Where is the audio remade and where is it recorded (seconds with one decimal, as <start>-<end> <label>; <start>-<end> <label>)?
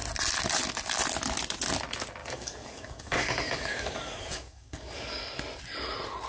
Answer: 0.0-2.2 recorded; 2.2-5.4 remade; 5.4-6.3 recorded